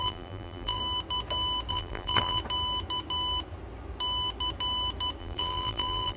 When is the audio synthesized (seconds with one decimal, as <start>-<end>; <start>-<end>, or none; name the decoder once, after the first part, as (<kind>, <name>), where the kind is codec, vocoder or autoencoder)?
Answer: 0.0-0.8 (vocoder, BigVGAN v2); 1.7-2.4; 5.2-6.2